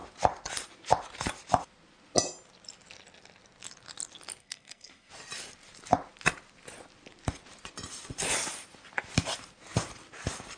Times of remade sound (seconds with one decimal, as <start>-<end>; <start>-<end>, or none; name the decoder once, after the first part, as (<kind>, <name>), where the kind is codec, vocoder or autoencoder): 4.4-5.1 (codec, SNAC)